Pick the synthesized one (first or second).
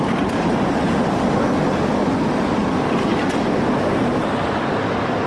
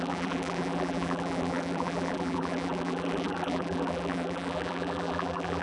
second